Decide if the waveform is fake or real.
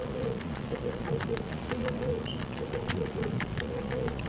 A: fake